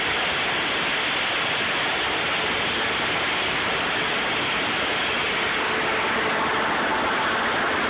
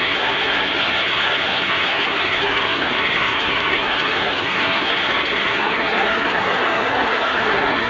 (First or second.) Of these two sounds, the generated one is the second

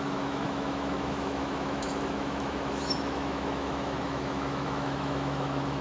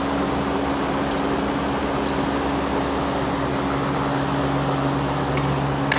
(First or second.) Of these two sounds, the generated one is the first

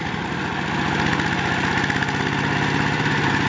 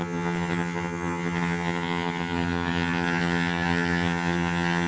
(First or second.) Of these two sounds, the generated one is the second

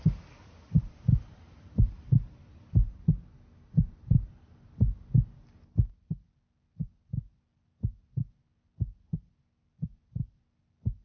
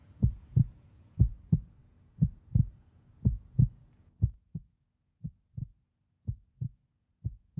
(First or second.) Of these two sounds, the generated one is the second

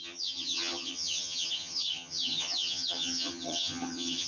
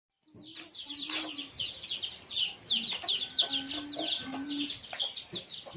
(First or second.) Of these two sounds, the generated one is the first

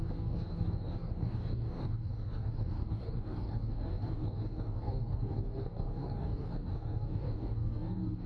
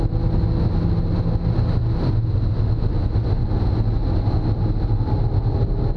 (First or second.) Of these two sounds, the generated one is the first